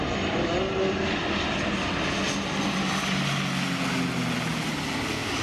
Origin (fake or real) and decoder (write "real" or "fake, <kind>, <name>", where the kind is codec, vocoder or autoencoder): real